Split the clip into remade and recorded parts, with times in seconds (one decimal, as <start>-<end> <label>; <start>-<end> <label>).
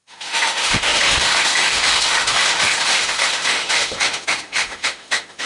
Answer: 0.0-5.5 remade